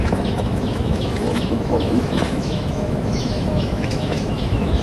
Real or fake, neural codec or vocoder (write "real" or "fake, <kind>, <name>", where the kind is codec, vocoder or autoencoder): fake, autoencoder, DAC-VAE